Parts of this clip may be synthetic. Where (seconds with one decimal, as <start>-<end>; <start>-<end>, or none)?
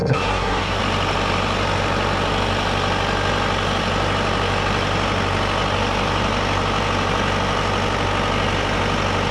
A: 0.0-0.8